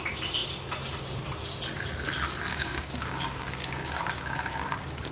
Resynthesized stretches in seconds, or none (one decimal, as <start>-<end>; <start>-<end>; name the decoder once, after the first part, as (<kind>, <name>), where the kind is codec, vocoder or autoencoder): 2.5-5.1 (codec, DAC)